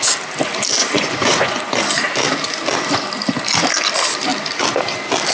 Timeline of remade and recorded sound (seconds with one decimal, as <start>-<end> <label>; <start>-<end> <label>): 0.0-0.8 recorded; 0.8-1.8 remade; 1.8-5.3 recorded